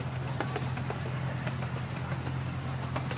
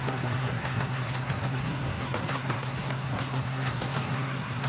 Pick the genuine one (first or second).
first